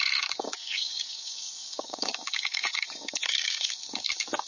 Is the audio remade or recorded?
remade